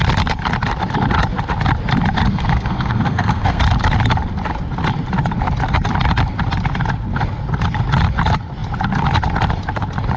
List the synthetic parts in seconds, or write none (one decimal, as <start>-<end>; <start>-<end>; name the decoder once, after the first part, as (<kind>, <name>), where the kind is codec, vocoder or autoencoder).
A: 2.3-3.6 (codec, SNAC)